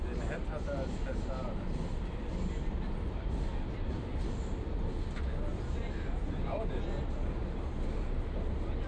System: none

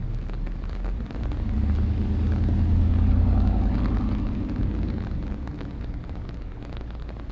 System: codec, DAC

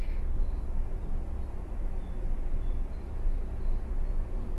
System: none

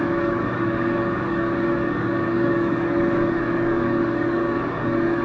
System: codec, DAC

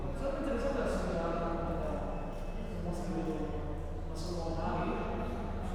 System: none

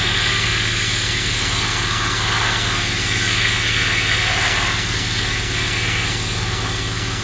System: codec, SNAC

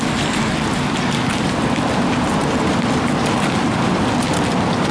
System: none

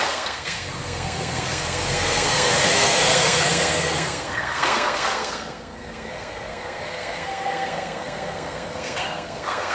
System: codec, SNAC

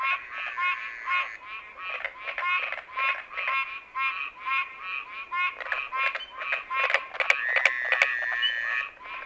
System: none